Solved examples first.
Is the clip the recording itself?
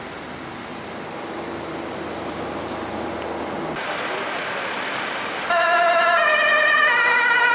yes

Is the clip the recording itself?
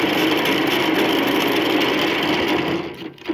yes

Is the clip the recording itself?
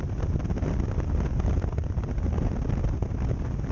yes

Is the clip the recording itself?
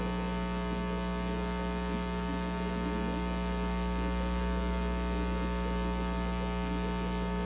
yes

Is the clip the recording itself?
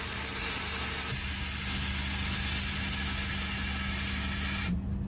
yes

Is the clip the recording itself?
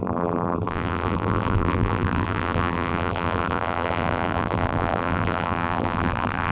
no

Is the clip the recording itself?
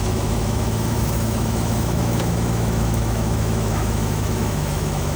no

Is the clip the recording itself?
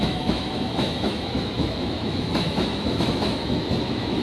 no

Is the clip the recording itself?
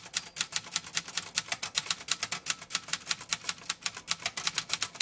yes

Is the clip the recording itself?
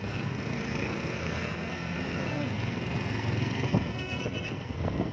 no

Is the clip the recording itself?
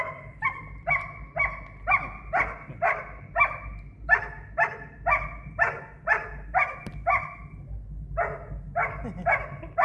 yes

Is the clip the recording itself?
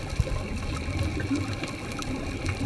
yes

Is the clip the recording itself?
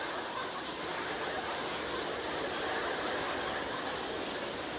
yes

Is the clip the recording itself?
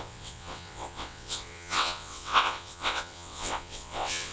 no